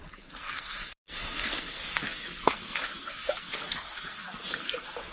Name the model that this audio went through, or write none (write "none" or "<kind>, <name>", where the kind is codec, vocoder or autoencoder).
codec, SNAC